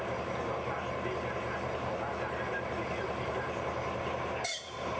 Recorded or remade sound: remade